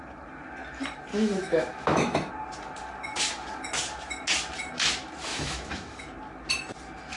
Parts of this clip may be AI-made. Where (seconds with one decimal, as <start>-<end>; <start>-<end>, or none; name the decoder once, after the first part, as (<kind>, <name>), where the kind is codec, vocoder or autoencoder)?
1.1-2.3 (autoencoder, DAC-VAE); 5.3-6.0